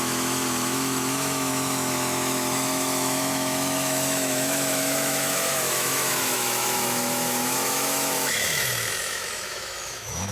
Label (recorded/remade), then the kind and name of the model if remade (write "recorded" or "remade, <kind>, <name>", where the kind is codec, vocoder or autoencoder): remade, autoencoder, DAC-VAE